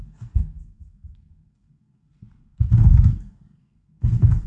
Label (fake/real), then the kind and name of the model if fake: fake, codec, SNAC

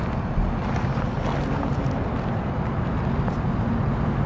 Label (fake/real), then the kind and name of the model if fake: real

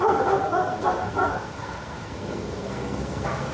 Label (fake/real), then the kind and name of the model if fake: fake, codec, SNAC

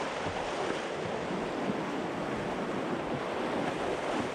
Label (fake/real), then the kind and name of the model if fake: real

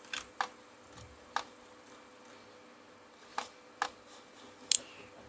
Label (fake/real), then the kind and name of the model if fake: real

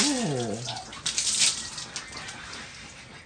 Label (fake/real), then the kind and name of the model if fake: real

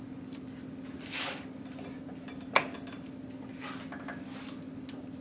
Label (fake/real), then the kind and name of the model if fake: real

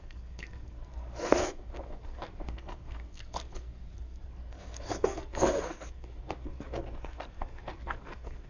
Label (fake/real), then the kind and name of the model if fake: fake, codec, SNAC